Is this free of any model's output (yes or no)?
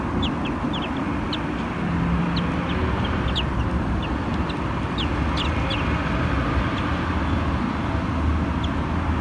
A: yes